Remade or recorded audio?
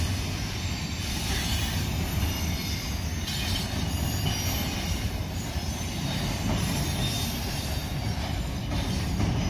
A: recorded